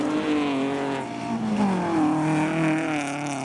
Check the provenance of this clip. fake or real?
real